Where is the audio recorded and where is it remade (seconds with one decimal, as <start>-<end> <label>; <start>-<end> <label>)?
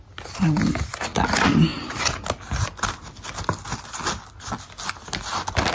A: 0.0-5.7 recorded